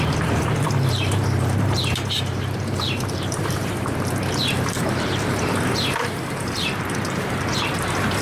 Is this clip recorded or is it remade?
remade